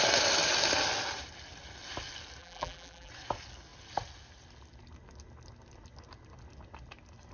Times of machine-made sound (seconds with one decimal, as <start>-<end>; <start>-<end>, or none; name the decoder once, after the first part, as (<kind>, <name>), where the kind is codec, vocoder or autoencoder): 2.4-3.1 (vocoder, BigVGAN v2)